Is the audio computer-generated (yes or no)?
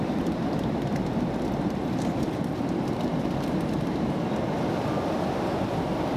yes